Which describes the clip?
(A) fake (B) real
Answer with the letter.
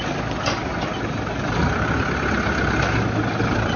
B